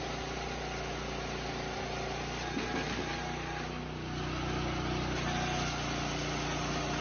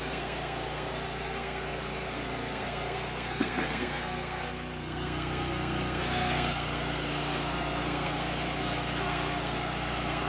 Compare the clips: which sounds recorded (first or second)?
first